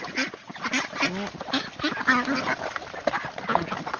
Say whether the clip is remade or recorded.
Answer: recorded